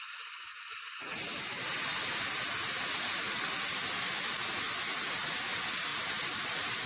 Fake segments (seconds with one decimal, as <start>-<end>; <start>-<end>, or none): none